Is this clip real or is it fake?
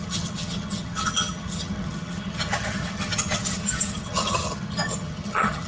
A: fake